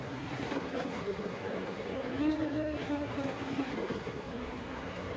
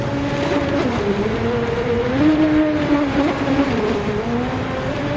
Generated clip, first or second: first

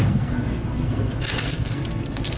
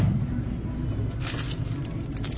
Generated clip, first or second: first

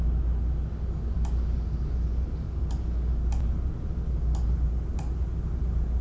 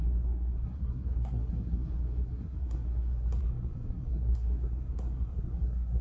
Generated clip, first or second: second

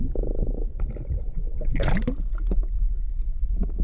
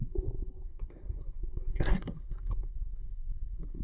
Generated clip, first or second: second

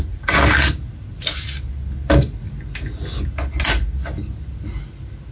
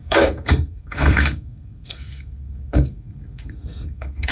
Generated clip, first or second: second